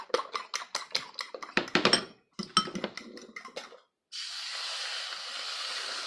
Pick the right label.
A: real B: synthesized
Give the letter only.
A